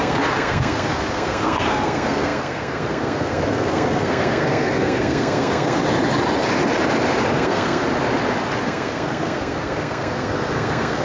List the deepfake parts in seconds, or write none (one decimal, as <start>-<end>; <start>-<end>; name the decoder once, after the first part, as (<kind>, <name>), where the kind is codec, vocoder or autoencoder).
0.0-5.8 (codec, SNAC); 7.3-7.8; 8.6-11.0